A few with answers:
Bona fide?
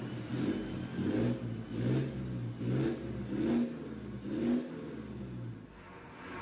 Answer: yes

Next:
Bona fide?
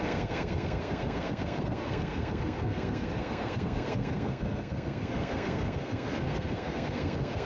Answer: no